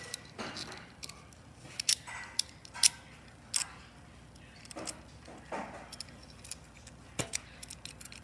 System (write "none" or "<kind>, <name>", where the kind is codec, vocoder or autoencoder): none